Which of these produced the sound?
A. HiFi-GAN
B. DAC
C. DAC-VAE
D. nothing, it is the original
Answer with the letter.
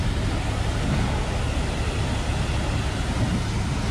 D